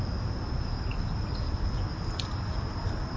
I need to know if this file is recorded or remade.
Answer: recorded